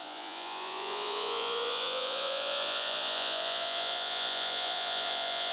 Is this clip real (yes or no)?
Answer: no